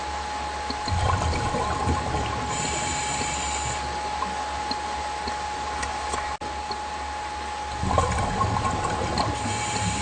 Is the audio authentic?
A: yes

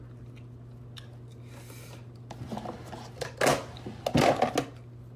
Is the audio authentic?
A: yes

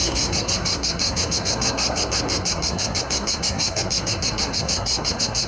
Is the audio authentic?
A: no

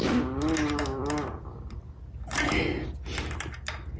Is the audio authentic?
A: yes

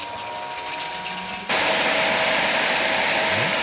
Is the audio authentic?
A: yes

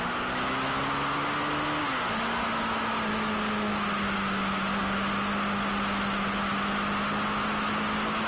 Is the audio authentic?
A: yes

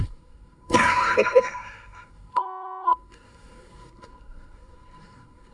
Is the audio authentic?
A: no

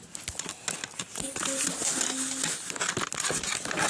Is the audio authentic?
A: yes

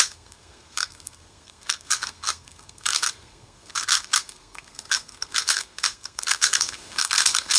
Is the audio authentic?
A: no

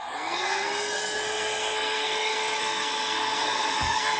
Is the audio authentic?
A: no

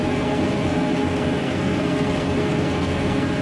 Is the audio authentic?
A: no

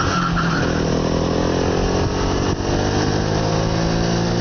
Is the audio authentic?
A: yes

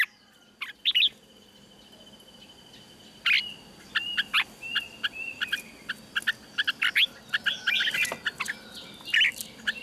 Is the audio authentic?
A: yes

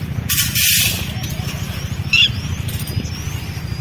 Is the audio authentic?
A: yes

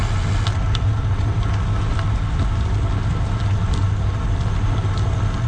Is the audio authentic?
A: yes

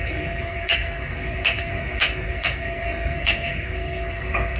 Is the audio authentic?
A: no